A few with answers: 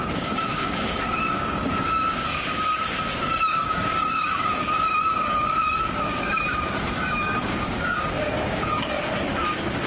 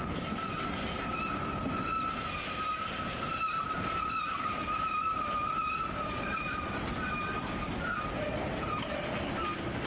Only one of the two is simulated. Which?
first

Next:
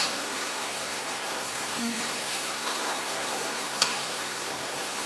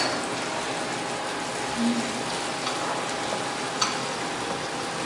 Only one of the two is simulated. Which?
first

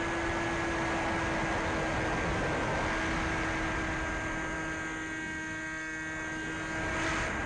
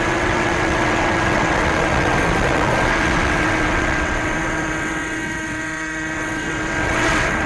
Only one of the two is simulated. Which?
second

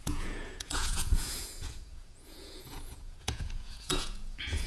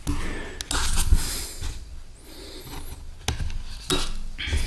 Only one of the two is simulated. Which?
first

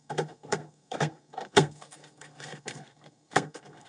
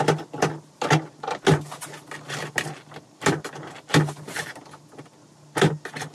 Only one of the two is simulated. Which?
first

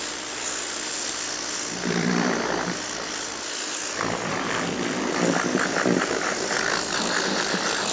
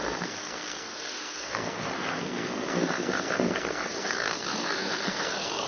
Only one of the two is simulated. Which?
second